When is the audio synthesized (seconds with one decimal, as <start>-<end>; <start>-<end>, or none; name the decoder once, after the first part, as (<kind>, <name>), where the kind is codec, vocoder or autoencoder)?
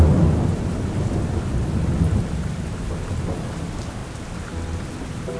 none